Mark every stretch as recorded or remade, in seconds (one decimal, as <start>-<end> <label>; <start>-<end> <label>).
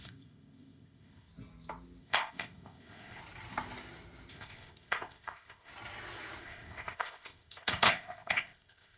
0.0-1.3 remade; 1.3-2.0 recorded; 2.0-3.2 remade; 3.2-4.3 recorded; 4.3-5.7 remade; 5.7-6.4 recorded; 6.4-9.0 remade